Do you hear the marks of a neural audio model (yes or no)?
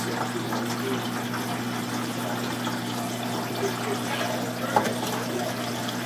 no